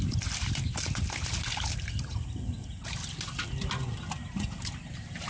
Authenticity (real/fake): real